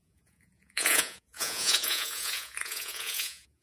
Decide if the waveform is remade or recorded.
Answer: remade